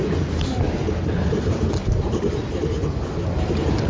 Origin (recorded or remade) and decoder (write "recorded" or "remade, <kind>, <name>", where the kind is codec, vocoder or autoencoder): recorded